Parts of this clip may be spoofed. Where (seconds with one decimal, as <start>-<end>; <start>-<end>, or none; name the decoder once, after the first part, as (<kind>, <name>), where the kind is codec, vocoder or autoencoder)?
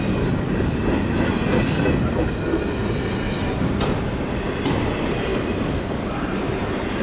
5.3-6.6 (vocoder, BigVGAN v2)